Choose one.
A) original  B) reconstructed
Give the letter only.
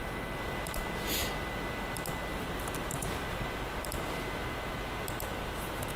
A